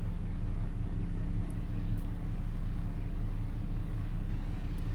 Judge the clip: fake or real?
fake